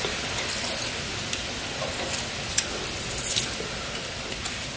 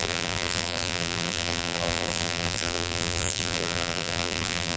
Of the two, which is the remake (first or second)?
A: second